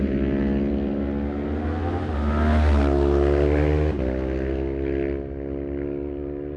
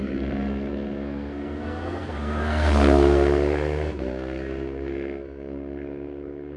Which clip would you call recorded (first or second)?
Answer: first